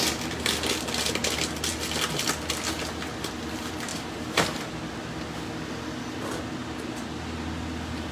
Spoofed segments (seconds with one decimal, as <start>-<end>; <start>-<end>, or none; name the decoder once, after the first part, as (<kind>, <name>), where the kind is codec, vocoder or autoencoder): 3.9-4.7 (vocoder, BigVGAN v2)